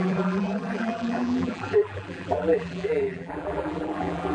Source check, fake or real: fake